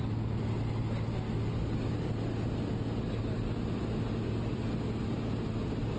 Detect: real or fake real